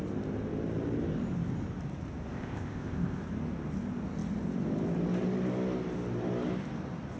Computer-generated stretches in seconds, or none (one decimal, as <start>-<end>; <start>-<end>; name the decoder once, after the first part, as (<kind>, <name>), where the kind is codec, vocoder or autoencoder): 2.3-3.2 (codec, ZipCodec)